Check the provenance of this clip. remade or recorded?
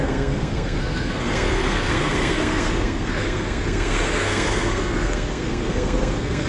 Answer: remade